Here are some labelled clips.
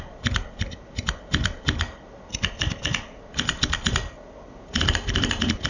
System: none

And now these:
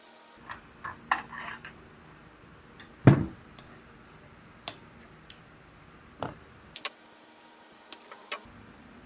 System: vocoder, BigVGAN v2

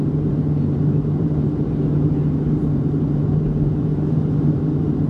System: vocoder, BigVGAN v2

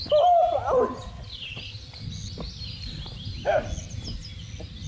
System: none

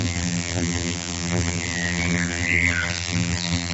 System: vocoder, BigVGAN v2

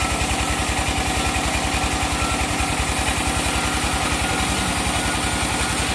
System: none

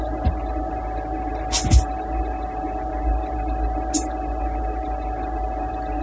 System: none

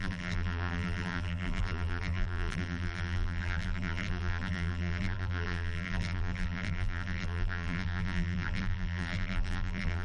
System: vocoder, BigVGAN v2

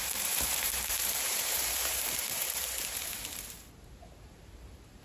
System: vocoder, BigVGAN v2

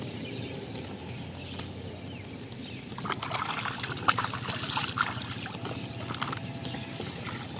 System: none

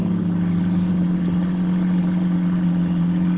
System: none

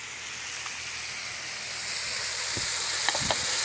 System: none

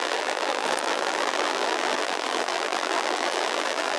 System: vocoder, BigVGAN v2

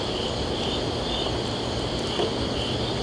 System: vocoder, BigVGAN v2